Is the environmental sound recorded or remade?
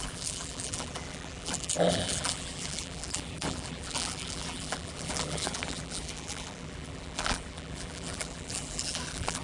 remade